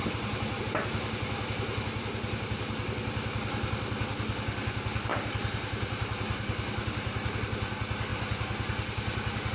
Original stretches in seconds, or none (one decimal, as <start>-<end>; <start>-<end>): 0.6-5.1; 7.4-9.5